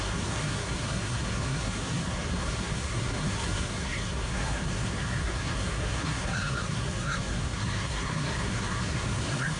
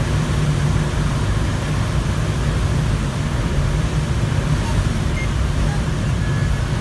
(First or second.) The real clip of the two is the second